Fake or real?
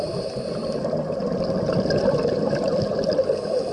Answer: real